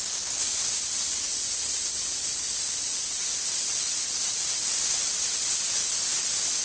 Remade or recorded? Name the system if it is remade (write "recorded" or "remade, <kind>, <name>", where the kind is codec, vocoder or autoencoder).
recorded